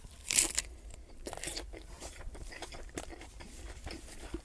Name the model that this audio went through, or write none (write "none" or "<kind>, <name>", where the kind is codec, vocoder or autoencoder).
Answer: vocoder, BigVGAN v2